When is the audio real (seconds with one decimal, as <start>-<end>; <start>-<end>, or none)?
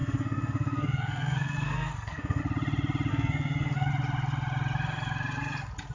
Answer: 2.4-3.1; 3.9-5.9